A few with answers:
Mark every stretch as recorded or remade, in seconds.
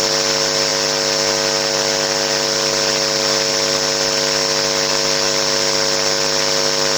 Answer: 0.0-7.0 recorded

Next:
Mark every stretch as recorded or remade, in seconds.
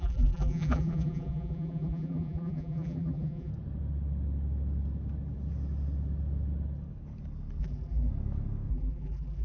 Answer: 0.0-3.5 remade; 3.5-7.6 recorded; 7.6-8.1 remade; 8.1-8.7 recorded; 8.7-9.4 remade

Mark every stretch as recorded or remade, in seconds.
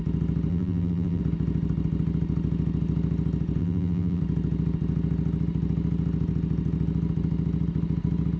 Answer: 0.0-0.5 recorded; 0.5-1.2 remade; 1.2-3.6 recorded; 3.6-4.2 remade; 4.2-8.4 recorded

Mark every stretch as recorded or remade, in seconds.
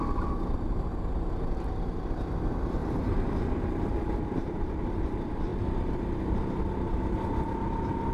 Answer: 0.0-2.8 recorded; 2.8-4.7 remade; 4.7-8.1 recorded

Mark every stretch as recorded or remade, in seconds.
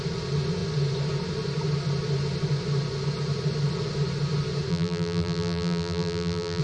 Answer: 0.0-4.7 recorded; 4.7-6.6 remade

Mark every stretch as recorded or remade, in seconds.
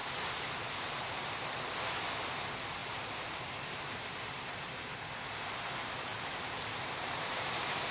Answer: 0.0-1.5 remade; 1.5-2.8 recorded; 2.8-4.9 remade; 4.9-6.1 recorded; 6.1-7.5 remade; 7.5-7.9 recorded